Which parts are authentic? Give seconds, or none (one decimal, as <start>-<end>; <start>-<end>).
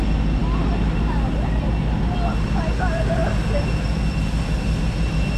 0.0-5.4